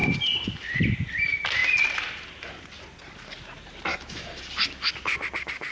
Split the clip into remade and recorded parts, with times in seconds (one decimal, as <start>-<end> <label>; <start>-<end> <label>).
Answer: 0.0-3.9 recorded; 3.9-4.4 remade; 4.4-5.7 recorded